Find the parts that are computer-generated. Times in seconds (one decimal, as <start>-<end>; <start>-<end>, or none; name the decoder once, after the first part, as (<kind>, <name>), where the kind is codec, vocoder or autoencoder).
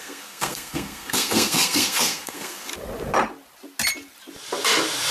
0.0-2.7 (codec, SNAC)